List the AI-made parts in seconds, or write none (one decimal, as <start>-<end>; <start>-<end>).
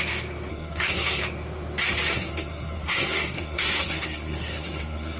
0.5-1.2; 2.1-5.2